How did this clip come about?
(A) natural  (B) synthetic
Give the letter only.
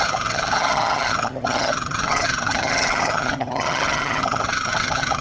B